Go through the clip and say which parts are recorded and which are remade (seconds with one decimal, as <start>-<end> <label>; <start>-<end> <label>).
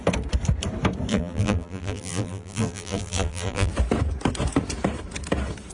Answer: 0.0-1.1 recorded; 1.1-3.7 remade; 3.7-5.7 recorded